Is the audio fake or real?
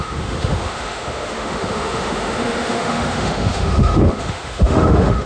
fake